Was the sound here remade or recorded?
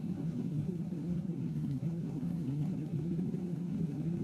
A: remade